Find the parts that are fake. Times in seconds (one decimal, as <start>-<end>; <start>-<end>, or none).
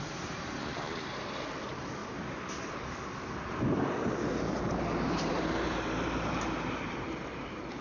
0.0-2.0; 4.1-7.8